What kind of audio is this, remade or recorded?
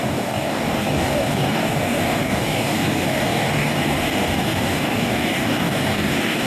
remade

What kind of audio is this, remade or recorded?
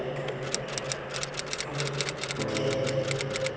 recorded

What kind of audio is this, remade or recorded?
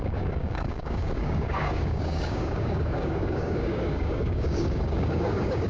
remade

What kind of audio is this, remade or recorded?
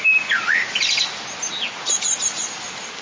recorded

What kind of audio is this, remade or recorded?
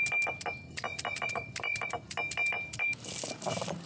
recorded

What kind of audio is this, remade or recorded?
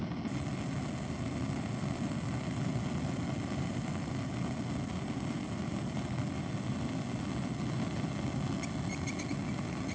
recorded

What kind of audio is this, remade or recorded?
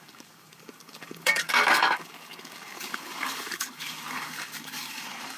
remade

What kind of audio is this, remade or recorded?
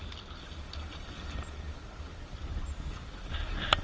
recorded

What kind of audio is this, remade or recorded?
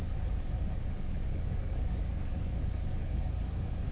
remade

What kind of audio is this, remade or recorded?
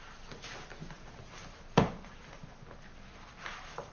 recorded